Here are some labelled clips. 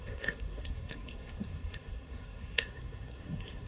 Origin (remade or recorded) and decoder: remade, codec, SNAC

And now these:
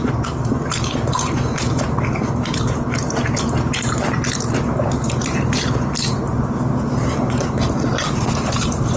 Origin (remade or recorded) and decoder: remade, vocoder, BigVGAN v2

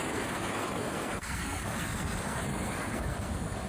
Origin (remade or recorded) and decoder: remade, codec, SNAC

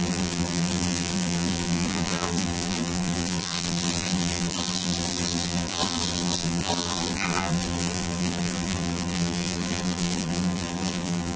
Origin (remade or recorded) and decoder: remade, vocoder, BigVGAN v2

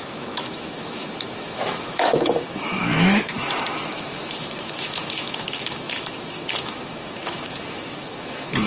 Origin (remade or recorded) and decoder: remade, autoencoder, DAC-VAE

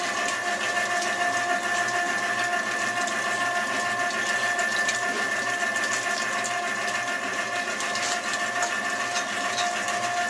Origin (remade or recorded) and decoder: recorded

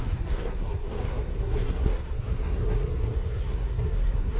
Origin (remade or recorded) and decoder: remade, codec, SNAC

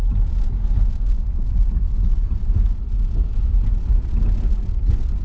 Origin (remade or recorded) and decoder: recorded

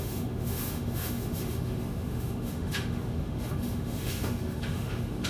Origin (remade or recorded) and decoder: remade, autoencoder, DAC-VAE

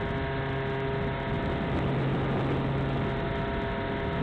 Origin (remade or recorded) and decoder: recorded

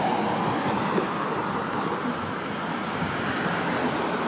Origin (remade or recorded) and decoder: recorded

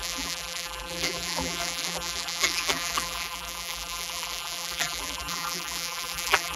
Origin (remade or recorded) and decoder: remade, vocoder, BigVGAN v2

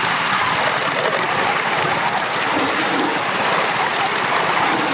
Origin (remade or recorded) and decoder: recorded